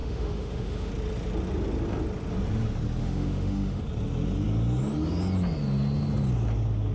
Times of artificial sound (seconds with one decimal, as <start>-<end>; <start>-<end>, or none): 0.0-0.9; 3.0-3.8